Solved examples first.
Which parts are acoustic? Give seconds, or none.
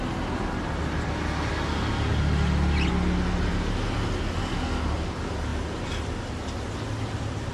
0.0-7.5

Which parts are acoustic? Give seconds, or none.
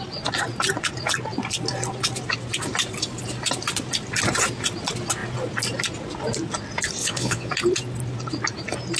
0.0-7.0; 7.5-9.0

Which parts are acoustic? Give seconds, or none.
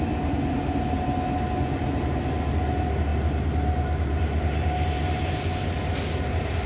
0.0-6.7